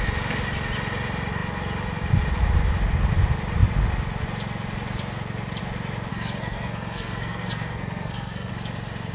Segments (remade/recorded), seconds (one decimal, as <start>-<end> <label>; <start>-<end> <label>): 0.0-6.1 recorded; 6.1-8.5 remade; 8.5-9.1 recorded